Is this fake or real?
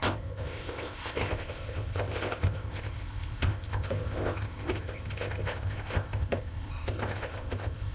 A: fake